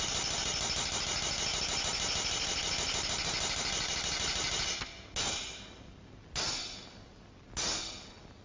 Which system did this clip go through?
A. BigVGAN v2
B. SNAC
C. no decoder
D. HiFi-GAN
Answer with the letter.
C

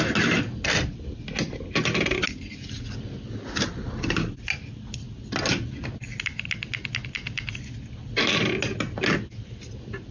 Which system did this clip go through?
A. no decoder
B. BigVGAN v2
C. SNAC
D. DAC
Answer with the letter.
A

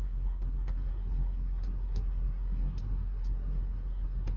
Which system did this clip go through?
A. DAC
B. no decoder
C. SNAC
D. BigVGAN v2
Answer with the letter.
C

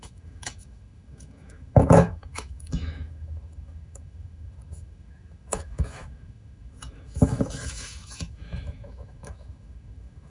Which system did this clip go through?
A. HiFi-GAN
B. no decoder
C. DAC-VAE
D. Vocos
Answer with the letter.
C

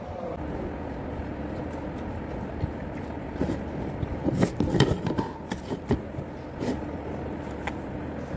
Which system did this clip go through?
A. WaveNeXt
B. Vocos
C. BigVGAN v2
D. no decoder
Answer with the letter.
D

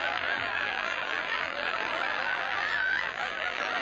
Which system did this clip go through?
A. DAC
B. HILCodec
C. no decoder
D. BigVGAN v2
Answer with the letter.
D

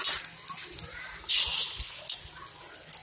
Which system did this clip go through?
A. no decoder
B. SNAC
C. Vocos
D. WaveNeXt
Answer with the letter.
A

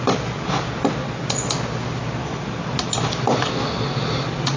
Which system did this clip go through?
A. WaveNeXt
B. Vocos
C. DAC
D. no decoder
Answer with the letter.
D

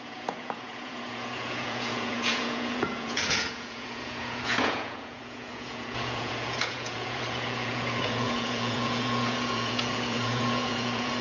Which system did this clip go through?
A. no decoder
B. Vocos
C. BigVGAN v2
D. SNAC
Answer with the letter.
B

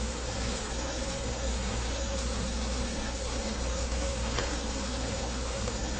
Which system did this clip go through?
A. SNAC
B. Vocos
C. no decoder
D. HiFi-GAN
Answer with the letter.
A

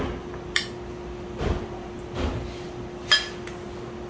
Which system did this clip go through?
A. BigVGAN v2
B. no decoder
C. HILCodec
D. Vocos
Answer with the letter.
B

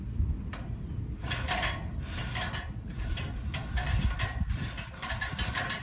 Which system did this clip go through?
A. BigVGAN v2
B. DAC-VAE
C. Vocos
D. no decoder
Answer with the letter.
D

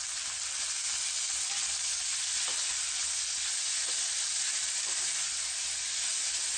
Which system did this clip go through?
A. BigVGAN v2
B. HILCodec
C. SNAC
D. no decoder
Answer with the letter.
D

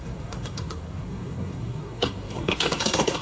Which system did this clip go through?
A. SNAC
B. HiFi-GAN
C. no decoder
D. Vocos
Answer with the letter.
A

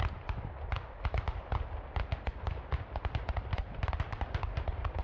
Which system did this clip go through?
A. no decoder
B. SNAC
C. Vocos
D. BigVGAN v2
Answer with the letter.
A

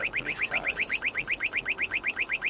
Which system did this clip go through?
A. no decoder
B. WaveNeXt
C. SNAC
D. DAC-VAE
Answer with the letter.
A